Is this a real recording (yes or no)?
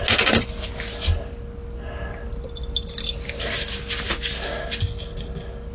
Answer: yes